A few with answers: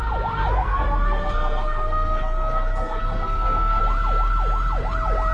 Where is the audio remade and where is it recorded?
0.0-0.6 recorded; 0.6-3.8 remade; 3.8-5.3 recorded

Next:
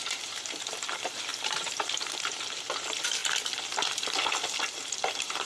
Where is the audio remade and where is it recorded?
0.0-3.2 remade; 3.2-5.1 recorded; 5.1-5.5 remade

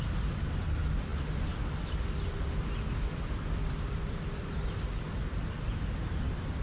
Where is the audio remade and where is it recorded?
0.0-6.6 recorded